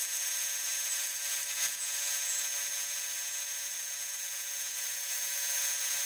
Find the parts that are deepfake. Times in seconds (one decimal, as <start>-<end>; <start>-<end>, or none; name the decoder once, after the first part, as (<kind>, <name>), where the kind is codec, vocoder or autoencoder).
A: none